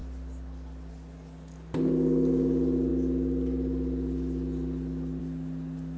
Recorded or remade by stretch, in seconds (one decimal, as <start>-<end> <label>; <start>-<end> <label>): 0.0-6.0 recorded